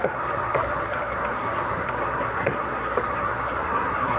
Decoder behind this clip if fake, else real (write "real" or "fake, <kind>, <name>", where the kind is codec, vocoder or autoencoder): fake, codec, SNAC